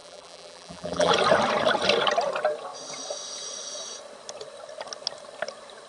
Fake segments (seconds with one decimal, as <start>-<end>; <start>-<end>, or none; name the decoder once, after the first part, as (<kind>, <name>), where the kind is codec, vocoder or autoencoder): 0.0-1.1 (vocoder, BigVGAN v2)